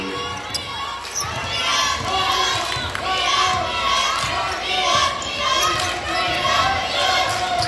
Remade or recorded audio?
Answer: recorded